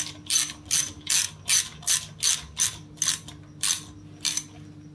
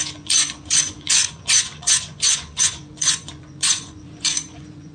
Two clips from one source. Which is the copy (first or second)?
second